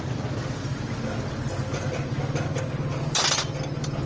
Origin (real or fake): real